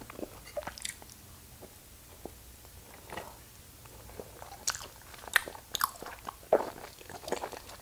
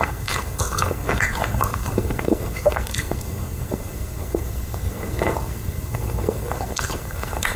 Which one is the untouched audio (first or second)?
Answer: first